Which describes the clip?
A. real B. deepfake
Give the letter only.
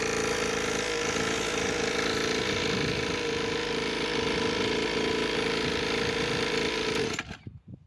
A